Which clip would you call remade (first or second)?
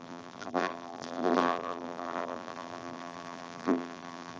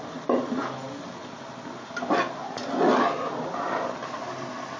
first